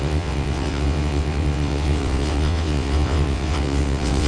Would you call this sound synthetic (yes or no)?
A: yes